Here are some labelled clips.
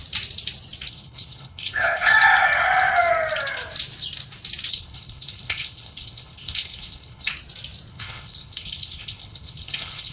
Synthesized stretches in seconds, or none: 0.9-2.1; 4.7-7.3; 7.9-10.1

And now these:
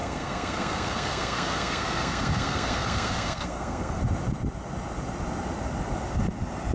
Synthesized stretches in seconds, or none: 0.0-4.0

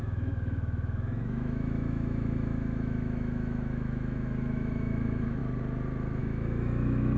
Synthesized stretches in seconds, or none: 0.0-5.4; 6.2-7.2